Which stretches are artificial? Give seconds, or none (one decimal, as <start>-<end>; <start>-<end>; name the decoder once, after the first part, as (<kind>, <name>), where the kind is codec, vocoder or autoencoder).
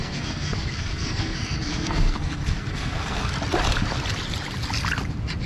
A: 0.0-3.3 (codec, SNAC)